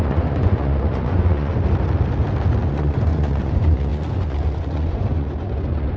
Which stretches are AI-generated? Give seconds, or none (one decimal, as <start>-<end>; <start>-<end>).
0.0-1.5; 2.7-6.0